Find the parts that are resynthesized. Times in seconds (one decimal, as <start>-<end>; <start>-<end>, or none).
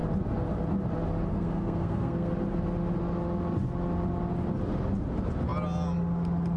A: 1.3-2.3